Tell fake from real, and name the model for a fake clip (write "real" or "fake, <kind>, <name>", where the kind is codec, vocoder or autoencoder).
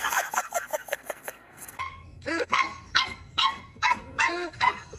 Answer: fake, codec, SNAC